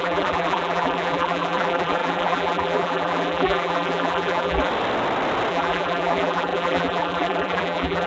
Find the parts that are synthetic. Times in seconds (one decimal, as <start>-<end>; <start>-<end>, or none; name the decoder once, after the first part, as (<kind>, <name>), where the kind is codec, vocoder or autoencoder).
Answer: 0.0-4.7 (vocoder, BigVGAN v2); 5.5-8.1